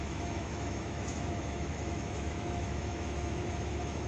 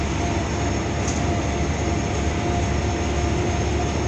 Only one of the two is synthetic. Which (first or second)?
first